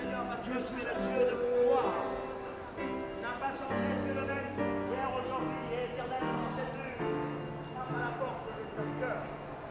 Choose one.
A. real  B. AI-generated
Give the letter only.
A